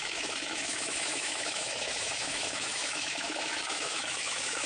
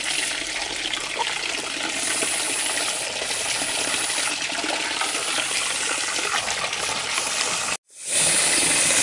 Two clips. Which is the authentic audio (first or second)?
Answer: second